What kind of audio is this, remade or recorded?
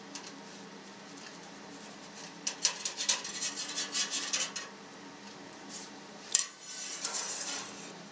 remade